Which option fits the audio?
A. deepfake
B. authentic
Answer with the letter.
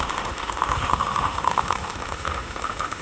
A